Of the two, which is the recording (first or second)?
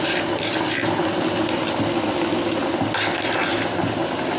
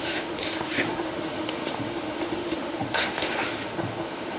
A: first